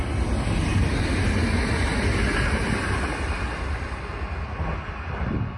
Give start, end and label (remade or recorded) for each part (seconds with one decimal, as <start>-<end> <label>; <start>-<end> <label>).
0.0-5.6 recorded